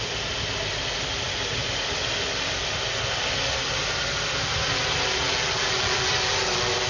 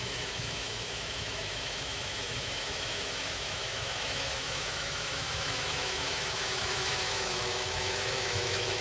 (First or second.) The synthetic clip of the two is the second